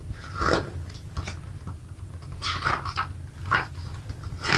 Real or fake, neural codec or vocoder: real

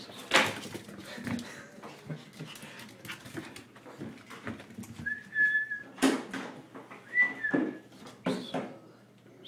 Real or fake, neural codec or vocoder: real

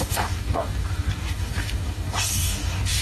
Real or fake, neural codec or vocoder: fake, codec, DAC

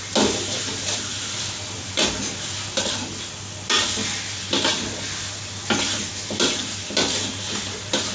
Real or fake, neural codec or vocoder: real